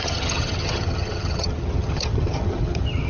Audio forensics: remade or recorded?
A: remade